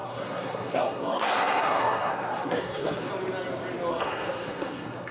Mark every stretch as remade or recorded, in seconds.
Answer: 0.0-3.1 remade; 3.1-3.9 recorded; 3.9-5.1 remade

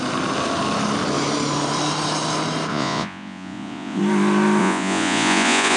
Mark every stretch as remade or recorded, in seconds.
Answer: 0.0-2.7 recorded; 2.7-4.0 remade; 4.0-4.6 recorded; 4.6-5.8 remade